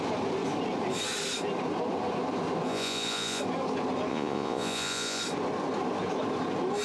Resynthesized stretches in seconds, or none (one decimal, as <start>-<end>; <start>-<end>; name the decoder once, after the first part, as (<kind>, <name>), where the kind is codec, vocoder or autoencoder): 2.7-3.4 (vocoder, Vocos); 4.1-5.2